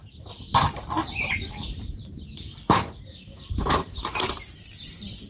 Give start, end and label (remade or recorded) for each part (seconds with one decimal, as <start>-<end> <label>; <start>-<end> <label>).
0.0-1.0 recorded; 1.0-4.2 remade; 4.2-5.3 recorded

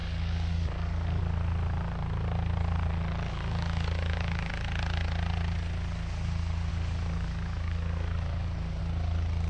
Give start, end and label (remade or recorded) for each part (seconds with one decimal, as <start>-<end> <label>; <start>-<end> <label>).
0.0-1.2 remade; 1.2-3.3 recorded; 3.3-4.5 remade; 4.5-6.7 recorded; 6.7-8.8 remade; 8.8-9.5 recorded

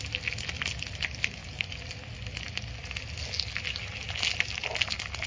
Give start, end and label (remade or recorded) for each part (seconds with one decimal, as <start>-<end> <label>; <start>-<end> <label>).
0.0-5.3 recorded

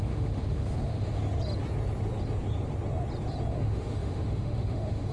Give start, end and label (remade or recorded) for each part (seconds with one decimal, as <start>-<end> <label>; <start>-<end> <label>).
0.0-1.2 remade; 1.2-3.5 recorded; 3.5-5.1 remade

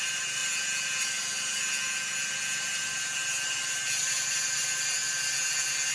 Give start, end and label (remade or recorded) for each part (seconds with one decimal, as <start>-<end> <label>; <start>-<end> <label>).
0.0-5.9 recorded